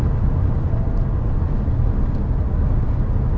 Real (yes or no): yes